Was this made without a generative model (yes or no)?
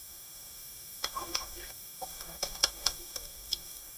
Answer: no